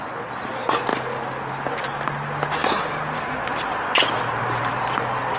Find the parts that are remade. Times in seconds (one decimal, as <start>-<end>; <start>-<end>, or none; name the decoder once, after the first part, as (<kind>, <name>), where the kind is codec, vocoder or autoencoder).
none